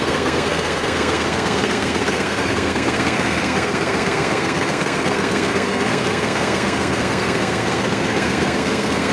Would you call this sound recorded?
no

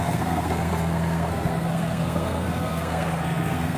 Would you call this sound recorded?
no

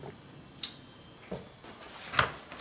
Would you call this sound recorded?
yes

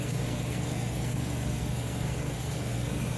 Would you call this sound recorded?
no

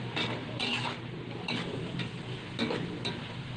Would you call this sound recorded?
yes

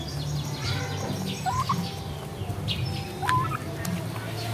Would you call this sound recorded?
yes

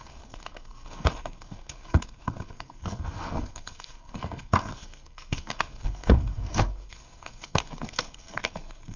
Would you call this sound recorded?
no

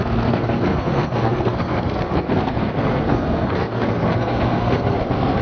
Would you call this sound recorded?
no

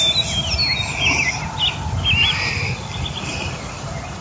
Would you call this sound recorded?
yes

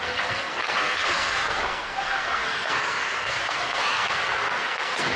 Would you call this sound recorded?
no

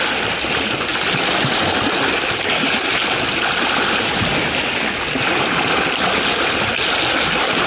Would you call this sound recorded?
yes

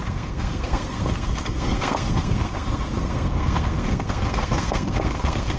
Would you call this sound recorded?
no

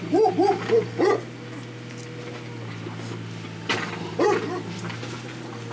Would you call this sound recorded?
yes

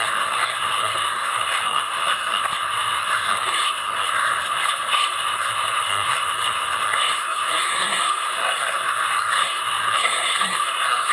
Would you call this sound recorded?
no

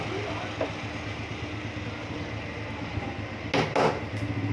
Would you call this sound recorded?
yes